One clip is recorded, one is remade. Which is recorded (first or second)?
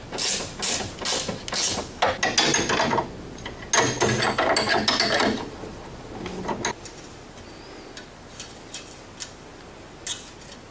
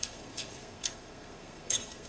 first